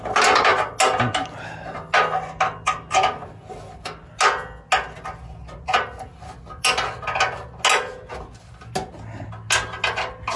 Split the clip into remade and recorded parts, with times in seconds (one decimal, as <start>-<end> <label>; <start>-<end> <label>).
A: 0.0-10.4 recorded